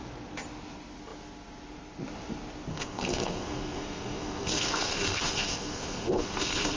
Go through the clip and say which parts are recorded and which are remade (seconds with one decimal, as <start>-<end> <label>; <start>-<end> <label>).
0.0-2.7 recorded; 2.7-6.8 remade